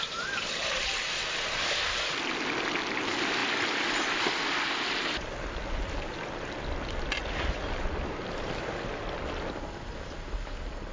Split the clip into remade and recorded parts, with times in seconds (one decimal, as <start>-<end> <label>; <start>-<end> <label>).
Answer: 0.0-10.9 recorded